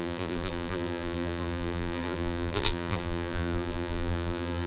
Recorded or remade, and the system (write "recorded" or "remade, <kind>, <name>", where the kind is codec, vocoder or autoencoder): remade, vocoder, BigVGAN v2